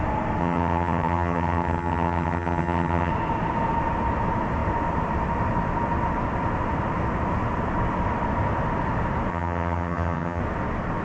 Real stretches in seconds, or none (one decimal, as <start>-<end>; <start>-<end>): 0.0-0.4; 3.1-9.3; 10.4-11.0